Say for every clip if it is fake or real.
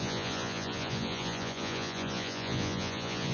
fake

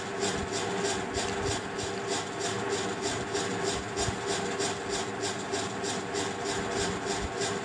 real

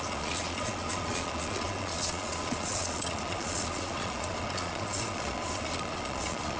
fake